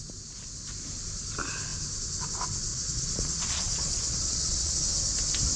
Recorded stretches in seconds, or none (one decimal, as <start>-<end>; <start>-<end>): 0.0-2.7; 4.8-5.6